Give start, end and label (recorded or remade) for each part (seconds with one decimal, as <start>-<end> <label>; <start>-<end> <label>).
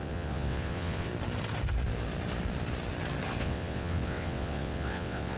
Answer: 0.0-1.1 remade; 1.1-3.4 recorded; 3.4-5.4 remade